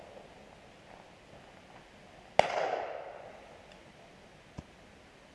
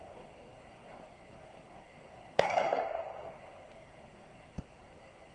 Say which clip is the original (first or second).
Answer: first